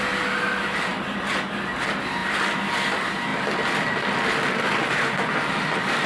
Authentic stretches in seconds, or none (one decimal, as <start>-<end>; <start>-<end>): 0.0-2.2; 2.7-6.1